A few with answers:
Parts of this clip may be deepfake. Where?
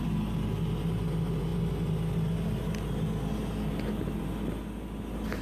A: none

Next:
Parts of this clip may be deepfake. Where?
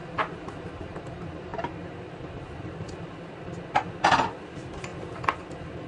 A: 0.0-1.5 (vocoder, BigVGAN v2); 4.4-5.9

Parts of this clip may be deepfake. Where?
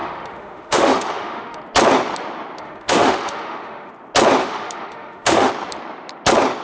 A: 0.0-1.6 (autoencoder, DAC-VAE); 2.6-3.9; 4.4-5.5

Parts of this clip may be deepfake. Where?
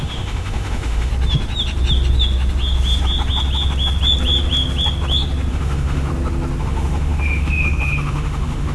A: 0.0-1.1 (autoencoder, DAC-VAE); 5.5-6.1; 6.6-8.7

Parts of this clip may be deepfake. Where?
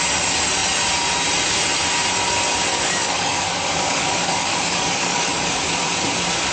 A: 2.7-5.6 (codec, DAC)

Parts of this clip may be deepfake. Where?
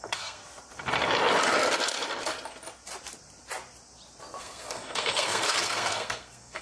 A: 0.0-0.4 (codec, SNAC); 4.4-6.6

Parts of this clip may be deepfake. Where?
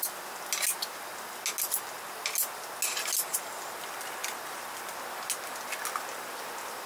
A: none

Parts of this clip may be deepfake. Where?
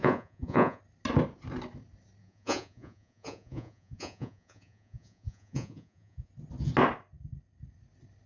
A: 0.0-0.8 (vocoder, Vocos); 2.2-6.3